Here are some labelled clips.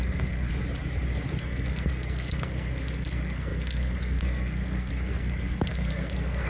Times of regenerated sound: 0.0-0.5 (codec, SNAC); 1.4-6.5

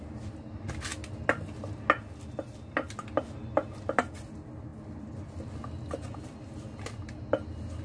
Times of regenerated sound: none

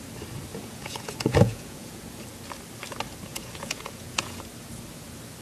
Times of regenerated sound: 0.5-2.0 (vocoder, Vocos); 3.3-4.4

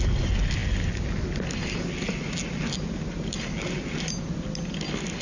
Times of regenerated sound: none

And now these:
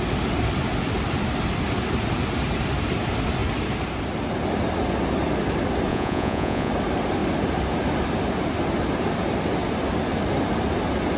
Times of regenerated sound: 5.9-6.7 (vocoder, Vocos)

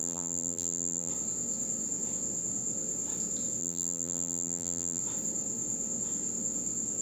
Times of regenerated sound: 0.0-1.1 (vocoder, BigVGAN v2); 3.6-5.0